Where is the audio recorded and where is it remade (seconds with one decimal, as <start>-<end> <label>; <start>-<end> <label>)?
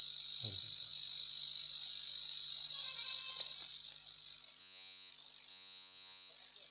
0.0-4.6 recorded; 4.6-5.1 remade; 5.1-5.5 recorded; 5.5-6.3 remade; 6.3-6.7 recorded